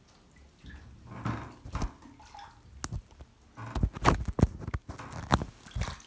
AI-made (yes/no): no